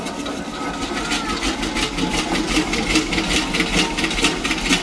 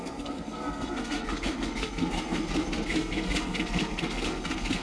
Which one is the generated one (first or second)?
second